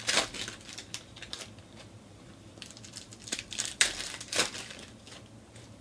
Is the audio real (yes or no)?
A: no